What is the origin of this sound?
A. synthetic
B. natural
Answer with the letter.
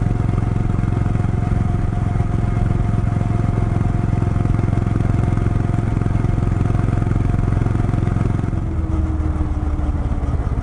B